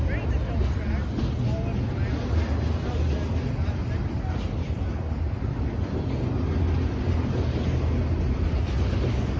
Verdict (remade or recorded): recorded